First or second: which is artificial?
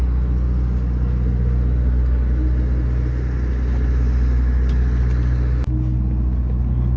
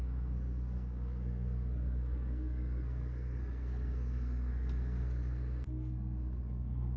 second